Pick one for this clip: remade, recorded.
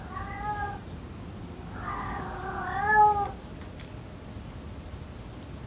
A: recorded